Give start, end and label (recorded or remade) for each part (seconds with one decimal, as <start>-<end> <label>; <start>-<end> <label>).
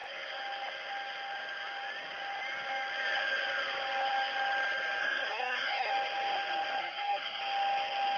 0.0-5.0 recorded; 5.0-5.9 remade; 5.9-6.8 recorded; 6.8-7.4 remade; 7.4-8.2 recorded